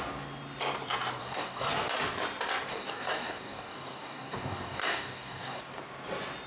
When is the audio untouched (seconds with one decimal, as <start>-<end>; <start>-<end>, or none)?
0.0-1.2; 1.7-2.7; 5.6-6.5